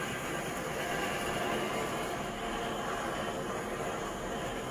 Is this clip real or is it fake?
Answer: real